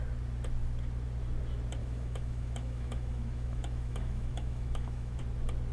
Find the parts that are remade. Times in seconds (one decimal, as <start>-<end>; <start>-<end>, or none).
1.8-5.2